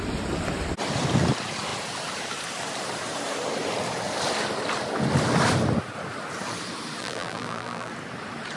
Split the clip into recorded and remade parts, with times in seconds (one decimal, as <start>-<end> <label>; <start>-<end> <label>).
0.0-7.0 recorded; 7.0-7.9 remade; 7.9-8.6 recorded